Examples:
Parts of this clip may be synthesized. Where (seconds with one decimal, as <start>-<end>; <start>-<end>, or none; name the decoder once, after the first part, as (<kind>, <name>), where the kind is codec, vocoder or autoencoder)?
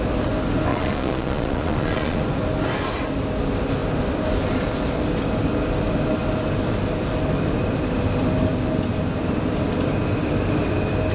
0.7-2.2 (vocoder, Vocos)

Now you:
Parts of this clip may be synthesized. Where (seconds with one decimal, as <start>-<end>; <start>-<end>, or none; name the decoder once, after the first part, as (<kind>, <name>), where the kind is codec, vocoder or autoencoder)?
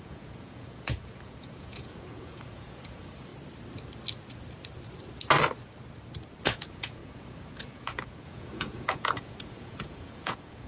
0.0-3.3 (vocoder, Vocos); 6.5-10.7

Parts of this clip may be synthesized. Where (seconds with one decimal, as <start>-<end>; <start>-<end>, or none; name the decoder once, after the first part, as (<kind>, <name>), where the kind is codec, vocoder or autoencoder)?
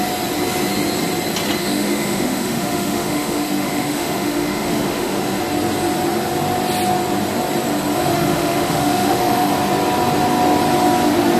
1.6-5.4 (autoencoder, DAC-VAE); 8.1-9.5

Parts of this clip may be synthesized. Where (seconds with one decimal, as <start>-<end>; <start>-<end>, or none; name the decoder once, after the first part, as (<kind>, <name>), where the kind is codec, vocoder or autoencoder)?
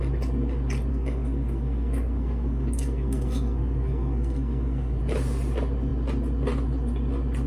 0.9-5.0 (codec, SNAC)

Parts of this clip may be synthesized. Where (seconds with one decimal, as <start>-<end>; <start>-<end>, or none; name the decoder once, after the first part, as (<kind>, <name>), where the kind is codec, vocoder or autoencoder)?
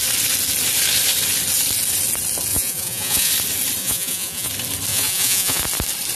2.5-3.3 (vocoder, Vocos); 3.8-4.5; 4.9-5.6